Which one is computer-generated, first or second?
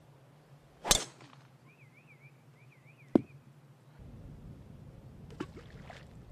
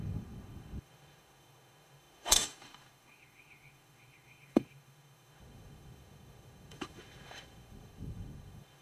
second